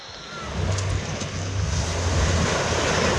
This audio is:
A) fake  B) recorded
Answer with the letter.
B